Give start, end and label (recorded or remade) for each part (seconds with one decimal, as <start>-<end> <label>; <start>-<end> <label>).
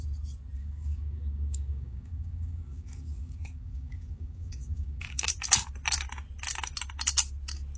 0.0-0.6 recorded; 0.6-5.3 remade; 5.3-7.8 recorded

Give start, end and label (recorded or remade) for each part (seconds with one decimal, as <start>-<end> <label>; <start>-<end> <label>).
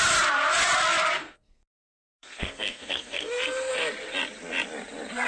0.0-1.2 recorded; 1.2-3.7 remade; 3.7-5.3 recorded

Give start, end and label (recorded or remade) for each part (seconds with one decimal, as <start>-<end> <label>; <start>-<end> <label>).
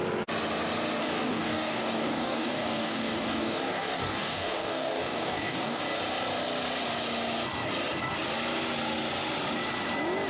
0.0-1.0 recorded; 1.0-5.8 remade; 5.8-10.3 recorded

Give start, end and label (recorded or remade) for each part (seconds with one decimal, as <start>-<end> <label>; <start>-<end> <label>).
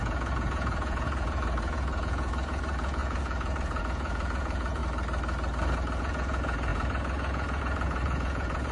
0.0-4.8 remade; 4.8-6.0 recorded; 6.0-8.7 remade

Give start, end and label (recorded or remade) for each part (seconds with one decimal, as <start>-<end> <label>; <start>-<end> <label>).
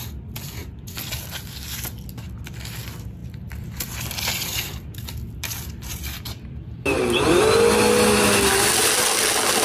0.0-3.2 recorded; 3.2-7.4 remade; 7.4-9.6 recorded